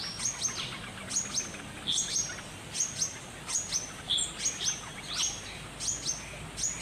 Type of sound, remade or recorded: recorded